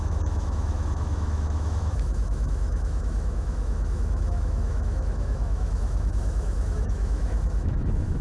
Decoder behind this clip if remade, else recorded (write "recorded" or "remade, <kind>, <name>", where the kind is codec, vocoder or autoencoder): remade, autoencoder, DAC-VAE